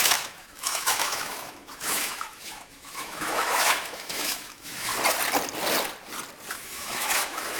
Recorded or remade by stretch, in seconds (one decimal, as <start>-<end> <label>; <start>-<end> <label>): 0.0-4.9 remade; 4.9-6.5 recorded; 6.5-7.6 remade